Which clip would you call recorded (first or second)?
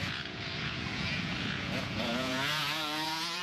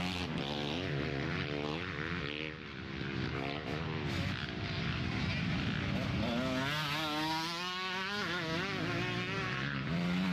second